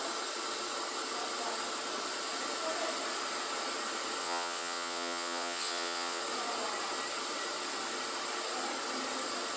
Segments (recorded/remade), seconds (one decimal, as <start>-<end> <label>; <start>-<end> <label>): 0.0-4.2 recorded; 4.2-6.2 remade; 6.2-9.6 recorded